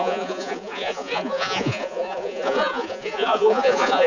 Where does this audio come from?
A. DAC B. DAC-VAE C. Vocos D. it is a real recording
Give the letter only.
C